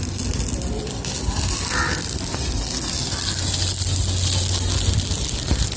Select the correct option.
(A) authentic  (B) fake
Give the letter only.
A